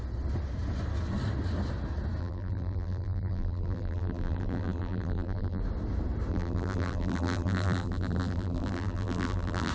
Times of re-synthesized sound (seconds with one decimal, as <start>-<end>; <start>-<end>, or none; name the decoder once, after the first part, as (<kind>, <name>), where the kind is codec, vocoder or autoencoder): 2.2-5.6 (vocoder, BigVGAN v2); 6.3-9.7